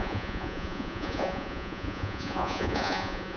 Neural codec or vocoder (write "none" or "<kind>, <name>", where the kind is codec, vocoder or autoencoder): vocoder, Vocos